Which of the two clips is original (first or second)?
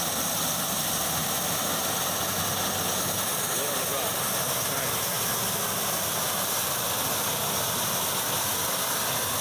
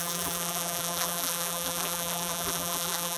first